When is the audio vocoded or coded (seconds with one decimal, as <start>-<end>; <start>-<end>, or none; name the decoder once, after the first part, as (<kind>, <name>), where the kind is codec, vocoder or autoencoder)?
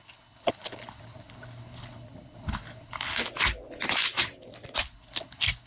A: 0.0-3.2 (codec, HILCodec); 4.8-5.7